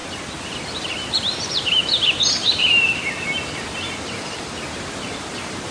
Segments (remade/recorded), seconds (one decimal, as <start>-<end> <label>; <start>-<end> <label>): 0.0-5.7 remade